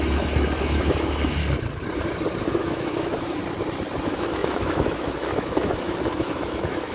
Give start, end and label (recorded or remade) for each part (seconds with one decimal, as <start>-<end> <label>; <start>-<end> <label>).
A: 0.0-1.4 remade; 1.4-2.4 recorded; 2.4-3.4 remade; 3.4-4.0 recorded; 4.0-6.9 remade